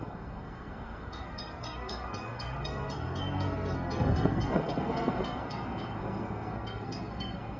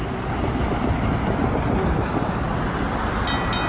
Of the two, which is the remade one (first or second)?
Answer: first